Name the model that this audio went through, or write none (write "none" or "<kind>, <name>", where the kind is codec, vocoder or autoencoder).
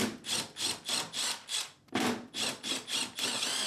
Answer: none